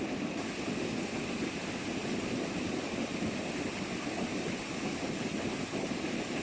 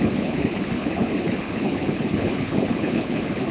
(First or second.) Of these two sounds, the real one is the first